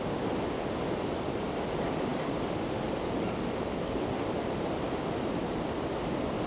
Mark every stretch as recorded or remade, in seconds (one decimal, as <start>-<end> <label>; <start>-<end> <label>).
0.0-6.5 recorded